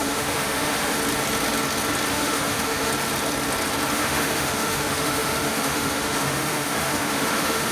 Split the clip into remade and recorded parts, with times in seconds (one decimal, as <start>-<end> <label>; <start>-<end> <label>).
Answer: 0.0-1.0 remade; 1.0-2.1 recorded; 2.1-2.9 remade; 2.9-3.9 recorded; 3.9-7.7 remade